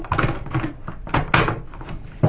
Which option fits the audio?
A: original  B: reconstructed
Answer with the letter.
A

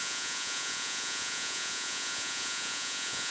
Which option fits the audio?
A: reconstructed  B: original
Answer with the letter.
A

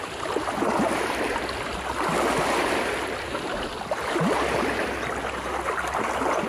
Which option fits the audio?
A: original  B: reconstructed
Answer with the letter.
A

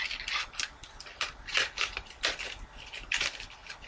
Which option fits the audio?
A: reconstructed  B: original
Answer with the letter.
B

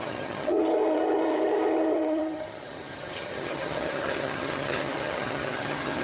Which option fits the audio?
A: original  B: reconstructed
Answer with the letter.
B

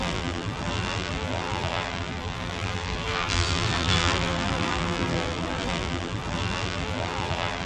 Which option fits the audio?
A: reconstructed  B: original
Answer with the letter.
A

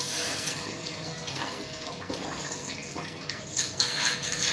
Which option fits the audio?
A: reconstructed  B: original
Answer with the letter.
A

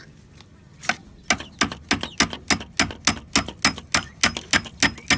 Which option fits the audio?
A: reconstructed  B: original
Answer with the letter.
B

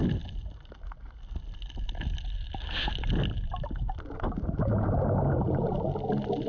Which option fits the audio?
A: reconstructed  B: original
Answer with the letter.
B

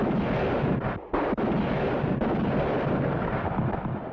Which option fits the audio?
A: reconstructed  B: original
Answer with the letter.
B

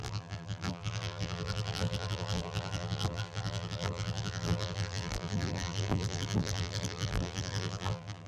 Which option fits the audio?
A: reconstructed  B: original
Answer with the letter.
A